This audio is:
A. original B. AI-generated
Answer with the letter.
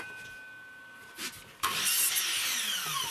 A